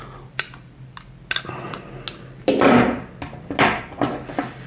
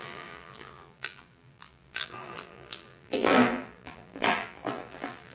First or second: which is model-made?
second